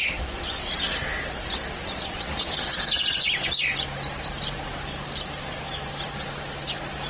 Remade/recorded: remade